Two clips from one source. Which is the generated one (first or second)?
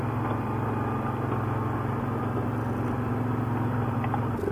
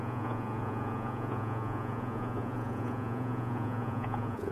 second